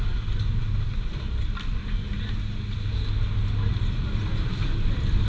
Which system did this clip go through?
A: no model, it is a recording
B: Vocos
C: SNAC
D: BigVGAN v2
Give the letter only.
A